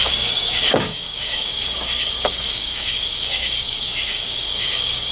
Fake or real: fake